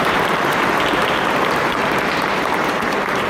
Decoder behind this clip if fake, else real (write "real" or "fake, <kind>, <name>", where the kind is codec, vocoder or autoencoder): fake, vocoder, BigVGAN v2